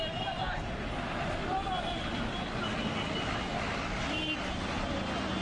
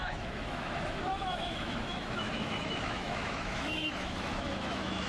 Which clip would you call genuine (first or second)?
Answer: first